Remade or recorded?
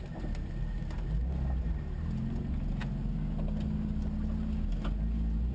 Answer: recorded